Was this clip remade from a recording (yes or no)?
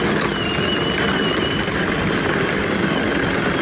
no